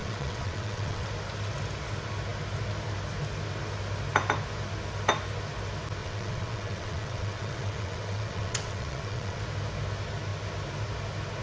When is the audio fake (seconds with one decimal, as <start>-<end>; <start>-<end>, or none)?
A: 0.0-1.1; 6.0-9.4